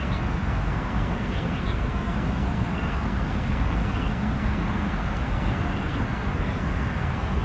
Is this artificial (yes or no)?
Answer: yes